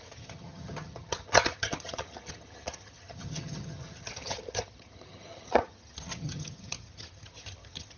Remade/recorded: remade